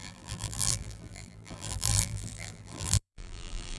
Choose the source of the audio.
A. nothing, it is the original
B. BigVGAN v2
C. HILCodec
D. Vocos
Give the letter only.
B